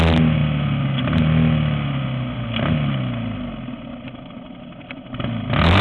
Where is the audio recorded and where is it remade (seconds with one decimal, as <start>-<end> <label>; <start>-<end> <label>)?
0.0-5.8 recorded